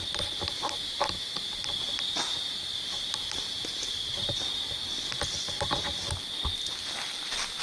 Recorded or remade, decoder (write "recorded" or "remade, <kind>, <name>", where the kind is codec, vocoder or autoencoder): recorded